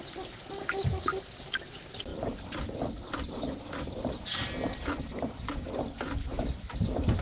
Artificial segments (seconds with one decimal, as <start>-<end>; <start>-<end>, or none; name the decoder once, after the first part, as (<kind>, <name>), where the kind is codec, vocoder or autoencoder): 0.0-7.2 (vocoder, BigVGAN v2)